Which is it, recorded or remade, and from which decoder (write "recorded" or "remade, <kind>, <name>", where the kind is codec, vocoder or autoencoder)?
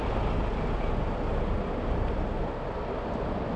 recorded